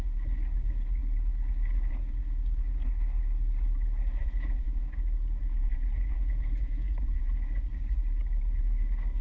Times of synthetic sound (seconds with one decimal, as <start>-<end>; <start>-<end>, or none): 4.2-4.8; 5.4-7.2